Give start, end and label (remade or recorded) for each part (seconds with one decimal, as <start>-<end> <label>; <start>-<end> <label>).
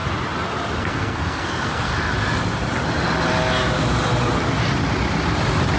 0.0-0.8 recorded; 0.8-1.9 remade; 1.9-5.8 recorded